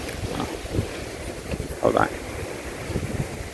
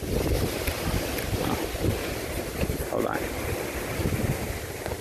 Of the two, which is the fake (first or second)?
first